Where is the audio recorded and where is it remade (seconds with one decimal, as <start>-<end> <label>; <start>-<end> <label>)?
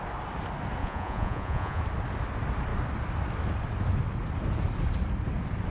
0.0-0.8 recorded; 0.8-1.8 remade; 1.8-5.7 recorded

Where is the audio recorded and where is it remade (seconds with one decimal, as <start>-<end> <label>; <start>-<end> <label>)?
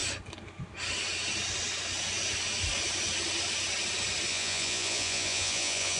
0.0-4.3 recorded; 4.3-6.0 remade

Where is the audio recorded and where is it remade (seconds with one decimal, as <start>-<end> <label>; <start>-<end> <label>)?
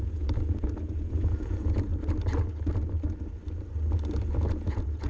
0.0-1.9 remade; 1.9-4.5 recorded; 4.5-5.1 remade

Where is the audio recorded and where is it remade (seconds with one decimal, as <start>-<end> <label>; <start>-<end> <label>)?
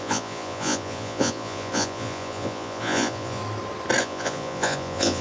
0.0-3.4 remade; 3.4-4.0 recorded; 4.0-5.2 remade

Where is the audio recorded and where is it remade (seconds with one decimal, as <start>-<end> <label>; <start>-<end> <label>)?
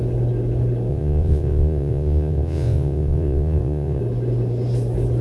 0.0-0.9 recorded; 0.9-4.0 remade; 4.0-5.2 recorded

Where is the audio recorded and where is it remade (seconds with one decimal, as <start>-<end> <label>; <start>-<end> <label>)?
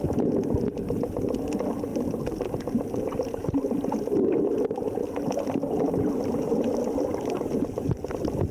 0.0-8.5 recorded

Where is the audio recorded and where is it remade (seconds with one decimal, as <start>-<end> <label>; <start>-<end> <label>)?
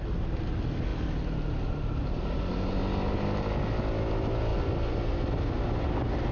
0.0-6.3 recorded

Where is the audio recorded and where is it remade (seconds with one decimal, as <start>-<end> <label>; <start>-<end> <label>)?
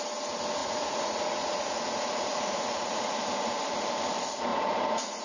0.0-0.6 recorded; 0.6-3.2 remade; 3.2-4.5 recorded; 4.5-5.2 remade